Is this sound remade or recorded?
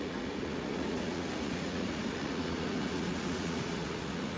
remade